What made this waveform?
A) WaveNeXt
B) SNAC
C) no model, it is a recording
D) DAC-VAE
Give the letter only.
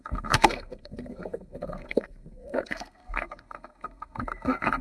B